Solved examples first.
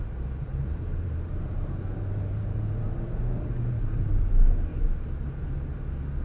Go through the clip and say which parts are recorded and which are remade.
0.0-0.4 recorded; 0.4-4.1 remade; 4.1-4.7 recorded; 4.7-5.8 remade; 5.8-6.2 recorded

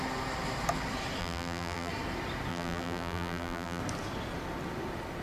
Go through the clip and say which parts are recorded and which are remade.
0.0-1.2 recorded; 1.2-1.9 remade; 1.9-2.5 recorded; 2.5-3.8 remade; 3.8-5.2 recorded

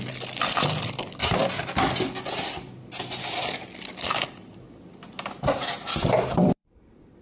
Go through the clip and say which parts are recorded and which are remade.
0.0-1.2 remade; 1.2-5.5 recorded; 5.5-7.2 remade

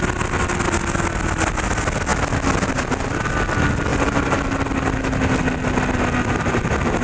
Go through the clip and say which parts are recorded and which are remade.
0.0-3.9 recorded; 3.9-4.4 remade; 4.4-7.0 recorded

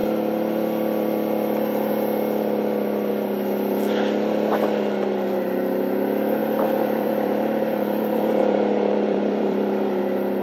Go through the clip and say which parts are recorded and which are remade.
0.0-6.4 recorded; 6.4-10.0 remade; 10.0-10.4 recorded

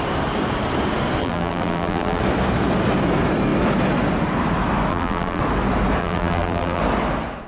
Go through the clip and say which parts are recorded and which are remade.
0.0-1.2 recorded; 1.2-2.2 remade; 2.2-4.9 recorded; 4.9-5.4 remade; 5.4-6.0 recorded; 6.0-6.8 remade; 6.8-7.5 recorded

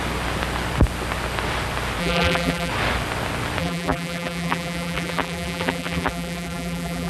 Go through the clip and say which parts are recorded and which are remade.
0.0-2.0 recorded; 2.0-2.7 remade; 2.7-3.6 recorded; 3.6-7.1 remade

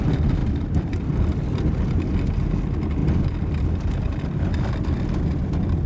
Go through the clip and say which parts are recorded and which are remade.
0.0-0.4 recorded; 0.4-1.6 remade; 1.6-5.9 recorded